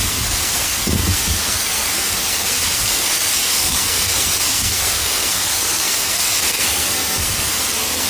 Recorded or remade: remade